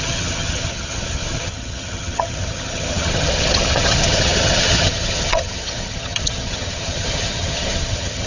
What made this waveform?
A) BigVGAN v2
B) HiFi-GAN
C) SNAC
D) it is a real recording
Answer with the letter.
B